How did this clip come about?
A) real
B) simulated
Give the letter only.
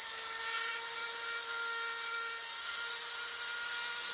A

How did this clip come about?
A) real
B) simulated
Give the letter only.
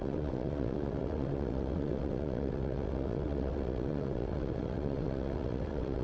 B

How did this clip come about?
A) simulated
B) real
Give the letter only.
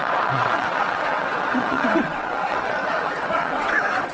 A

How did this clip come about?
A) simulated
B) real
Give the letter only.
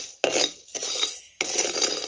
B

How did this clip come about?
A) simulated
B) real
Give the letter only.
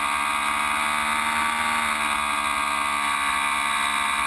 B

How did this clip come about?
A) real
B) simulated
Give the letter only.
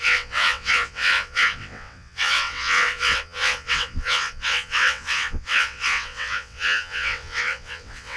B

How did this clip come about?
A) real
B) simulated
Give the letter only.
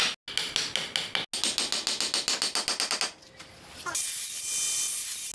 A